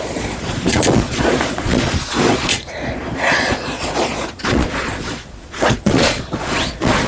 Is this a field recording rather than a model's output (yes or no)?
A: no